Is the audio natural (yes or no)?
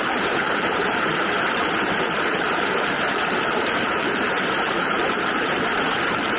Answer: no